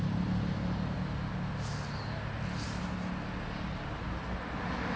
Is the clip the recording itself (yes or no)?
yes